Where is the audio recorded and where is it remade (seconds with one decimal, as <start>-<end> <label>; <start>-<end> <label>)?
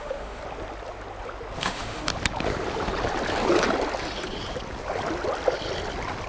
0.0-0.4 remade; 0.4-1.6 recorded; 1.6-2.1 remade; 2.1-6.3 recorded